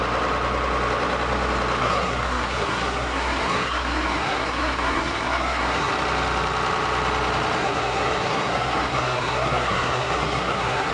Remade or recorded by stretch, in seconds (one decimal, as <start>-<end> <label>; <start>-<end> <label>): 0.0-1.8 recorded; 1.8-5.9 remade; 5.9-7.6 recorded; 7.6-10.9 remade